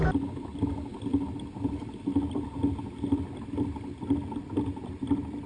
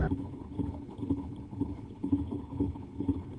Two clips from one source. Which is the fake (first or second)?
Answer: second